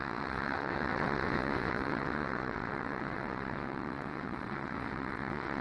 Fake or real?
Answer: fake